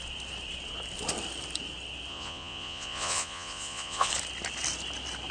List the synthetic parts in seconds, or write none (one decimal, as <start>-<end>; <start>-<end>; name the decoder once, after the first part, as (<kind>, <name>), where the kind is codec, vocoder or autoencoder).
2.1-4.1 (vocoder, Vocos)